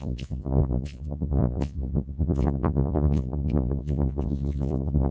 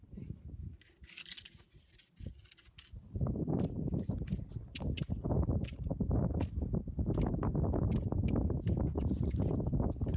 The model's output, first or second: first